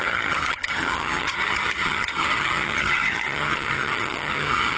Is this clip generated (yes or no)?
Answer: yes